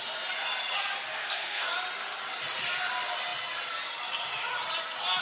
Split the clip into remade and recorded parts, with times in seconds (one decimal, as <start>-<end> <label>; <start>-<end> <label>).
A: 0.0-1.1 recorded; 1.1-1.7 remade; 1.7-5.2 recorded

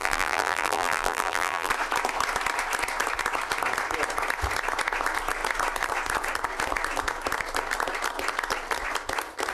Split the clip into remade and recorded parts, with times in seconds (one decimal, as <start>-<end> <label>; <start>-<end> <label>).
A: 0.0-1.7 remade; 1.7-9.5 recorded

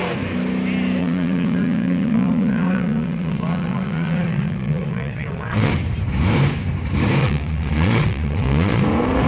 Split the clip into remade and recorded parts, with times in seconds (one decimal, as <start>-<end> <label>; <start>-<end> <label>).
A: 0.0-1.0 recorded; 1.0-5.7 remade; 5.7-7.2 recorded; 7.2-8.8 remade; 8.8-9.3 recorded

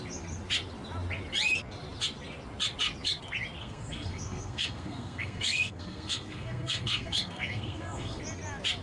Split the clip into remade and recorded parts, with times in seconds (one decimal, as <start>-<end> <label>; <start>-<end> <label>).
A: 0.0-3.6 recorded; 3.6-8.2 remade; 8.2-8.8 recorded

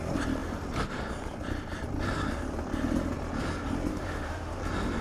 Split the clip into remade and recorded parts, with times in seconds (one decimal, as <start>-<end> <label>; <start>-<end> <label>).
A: 0.0-3.9 recorded; 3.9-4.6 remade; 4.6-5.0 recorded

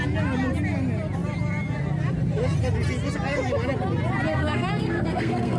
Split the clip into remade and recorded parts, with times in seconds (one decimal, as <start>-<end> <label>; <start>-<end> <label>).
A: 0.0-4.3 recorded; 4.3-5.6 remade

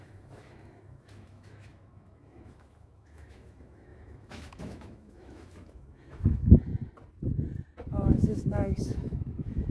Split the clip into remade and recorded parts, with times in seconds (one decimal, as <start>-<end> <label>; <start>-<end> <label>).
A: 0.0-6.7 remade; 6.7-7.9 recorded; 7.9-9.7 remade